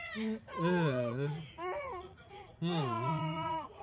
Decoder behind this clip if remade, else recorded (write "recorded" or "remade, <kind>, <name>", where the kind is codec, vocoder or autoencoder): remade, vocoder, Vocos